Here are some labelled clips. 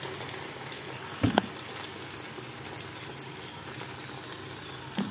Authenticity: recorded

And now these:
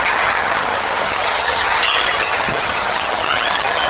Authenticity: remade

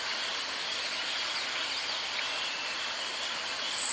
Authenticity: recorded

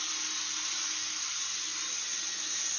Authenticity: recorded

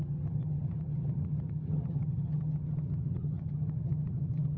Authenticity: remade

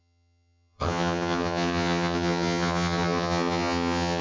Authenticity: remade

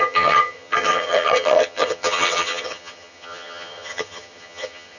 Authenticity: remade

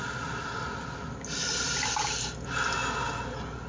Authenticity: recorded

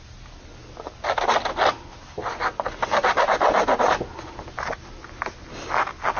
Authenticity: recorded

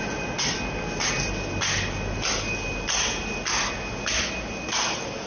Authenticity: recorded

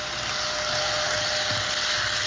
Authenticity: recorded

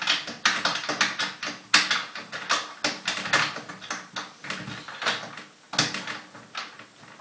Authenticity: recorded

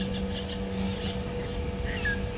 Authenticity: recorded